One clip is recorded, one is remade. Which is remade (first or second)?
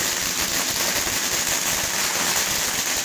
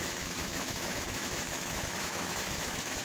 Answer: second